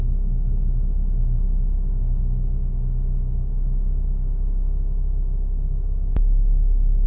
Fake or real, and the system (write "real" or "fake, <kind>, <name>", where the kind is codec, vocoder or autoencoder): real